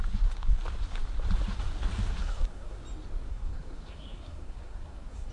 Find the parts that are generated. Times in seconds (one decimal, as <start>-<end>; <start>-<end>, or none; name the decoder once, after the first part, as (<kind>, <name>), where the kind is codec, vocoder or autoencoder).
2.2-2.8 (codec, SNAC); 3.3-5.3